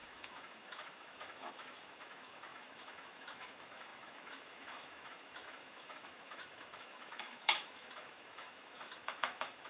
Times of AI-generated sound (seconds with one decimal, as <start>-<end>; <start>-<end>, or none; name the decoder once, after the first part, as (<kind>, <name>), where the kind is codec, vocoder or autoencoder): 0.0-9.7 (autoencoder, DAC-VAE)